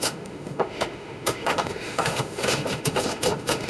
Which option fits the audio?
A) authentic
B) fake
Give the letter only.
B